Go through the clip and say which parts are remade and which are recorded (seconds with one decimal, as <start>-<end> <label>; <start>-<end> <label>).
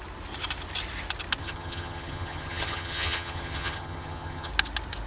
0.0-1.4 recorded; 1.4-4.5 remade; 4.5-5.1 recorded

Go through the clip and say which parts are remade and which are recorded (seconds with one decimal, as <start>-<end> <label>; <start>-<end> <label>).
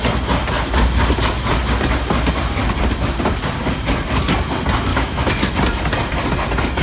0.0-4.9 recorded; 4.9-5.5 remade; 5.5-6.8 recorded